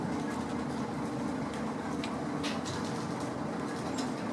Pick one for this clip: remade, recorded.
recorded